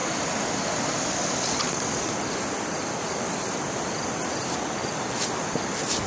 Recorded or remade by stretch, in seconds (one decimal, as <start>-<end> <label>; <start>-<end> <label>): 0.0-6.1 recorded